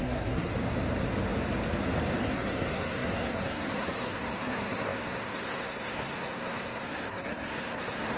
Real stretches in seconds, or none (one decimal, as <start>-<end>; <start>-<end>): 0.5-2.2